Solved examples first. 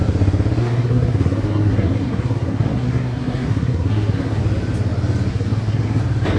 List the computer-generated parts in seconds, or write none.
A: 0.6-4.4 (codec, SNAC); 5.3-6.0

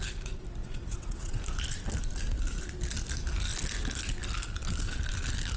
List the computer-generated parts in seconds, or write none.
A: 0.6-1.4 (vocoder, WaveNeXt)

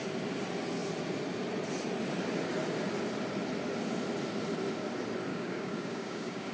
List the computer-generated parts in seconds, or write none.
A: 5.3-6.5 (codec, DAC)

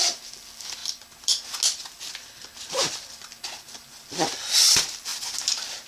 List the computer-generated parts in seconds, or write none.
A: 0.0-0.8 (vocoder, BigVGAN v2); 2.1-5.1

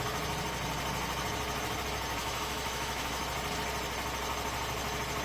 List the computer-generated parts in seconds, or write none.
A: 2.2-3.2 (autoencoder, DAC-VAE)

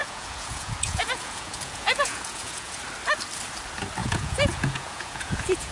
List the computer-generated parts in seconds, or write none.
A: 0.0-2.8 (vocoder, Vocos); 4.0-5.7